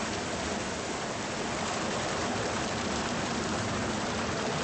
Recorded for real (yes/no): yes